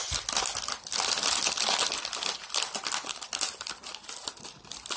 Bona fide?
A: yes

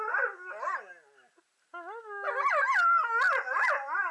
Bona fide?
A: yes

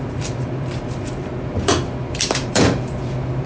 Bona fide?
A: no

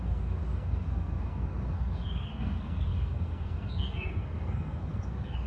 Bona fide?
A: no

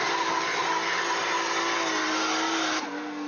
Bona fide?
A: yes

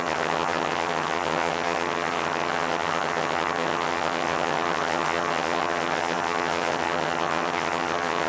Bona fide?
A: no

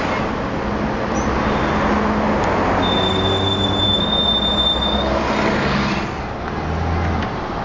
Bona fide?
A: yes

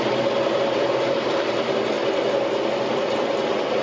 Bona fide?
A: yes